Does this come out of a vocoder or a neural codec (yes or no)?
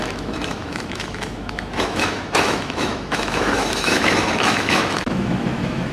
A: yes